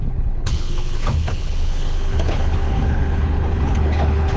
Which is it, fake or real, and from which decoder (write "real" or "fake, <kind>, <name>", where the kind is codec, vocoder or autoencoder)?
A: fake, codec, HILCodec